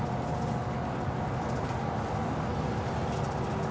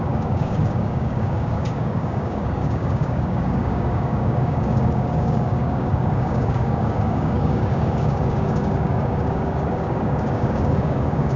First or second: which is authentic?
first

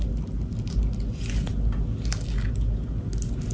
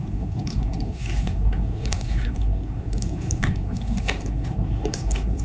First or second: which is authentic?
first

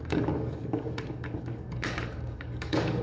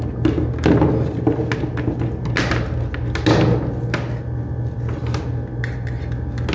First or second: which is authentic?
second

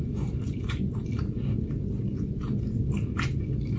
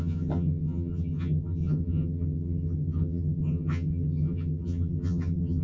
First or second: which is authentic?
first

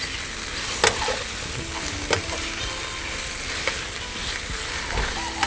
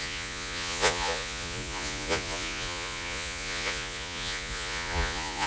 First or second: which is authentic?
first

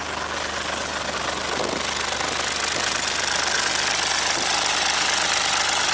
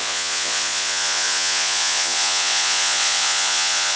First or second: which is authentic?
first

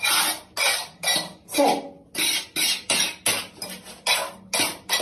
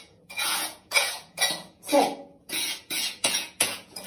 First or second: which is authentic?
first